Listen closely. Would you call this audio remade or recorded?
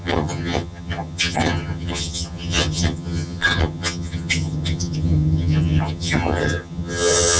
remade